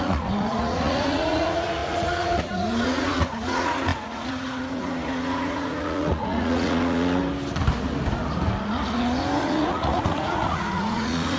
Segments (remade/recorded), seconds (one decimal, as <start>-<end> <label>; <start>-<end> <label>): 0.0-7.2 remade; 7.2-9.4 recorded; 9.4-11.4 remade